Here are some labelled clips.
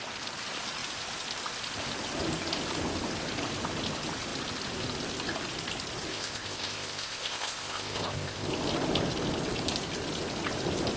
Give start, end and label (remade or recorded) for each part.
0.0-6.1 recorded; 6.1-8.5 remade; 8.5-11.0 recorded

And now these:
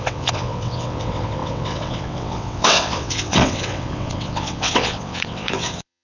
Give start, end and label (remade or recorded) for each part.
0.0-6.0 remade

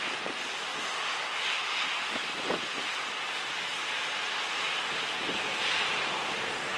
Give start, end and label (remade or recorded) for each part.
0.0-0.7 remade; 0.7-4.8 recorded; 4.8-6.8 remade

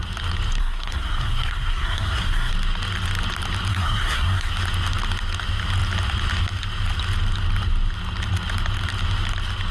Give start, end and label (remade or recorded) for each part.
0.0-0.6 recorded; 0.6-2.5 remade; 2.5-3.7 recorded; 3.7-4.5 remade; 4.5-9.7 recorded

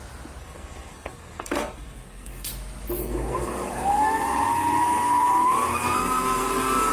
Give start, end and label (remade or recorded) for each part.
0.0-0.4 recorded; 0.4-2.5 remade; 2.5-3.0 recorded; 3.0-6.9 remade

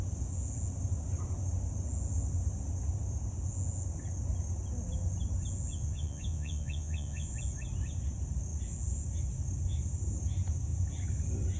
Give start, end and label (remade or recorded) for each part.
0.0-5.7 recorded; 5.7-7.3 remade; 7.3-11.6 recorded

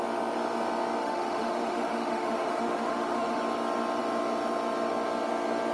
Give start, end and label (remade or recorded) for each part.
0.0-1.0 recorded; 1.0-3.4 remade; 3.4-5.7 recorded

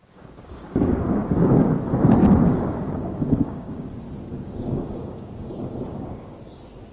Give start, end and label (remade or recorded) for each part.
0.0-1.7 remade; 1.7-2.2 recorded; 2.2-3.9 remade; 3.9-4.3 recorded; 4.3-6.4 remade; 6.4-6.9 recorded